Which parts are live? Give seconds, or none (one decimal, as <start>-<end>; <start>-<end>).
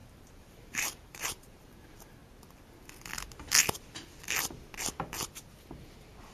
2.2-6.3